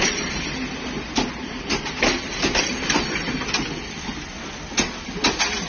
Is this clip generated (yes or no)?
no